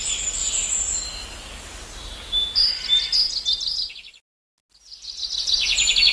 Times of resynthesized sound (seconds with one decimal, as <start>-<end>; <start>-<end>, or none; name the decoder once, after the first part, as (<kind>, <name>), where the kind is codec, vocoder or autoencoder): 4.8-5.5 (vocoder, BigVGAN v2)